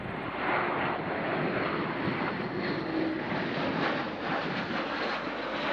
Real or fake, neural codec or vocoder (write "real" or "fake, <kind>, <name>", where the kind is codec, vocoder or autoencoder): real